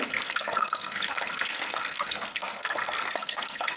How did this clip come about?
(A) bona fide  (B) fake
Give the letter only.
B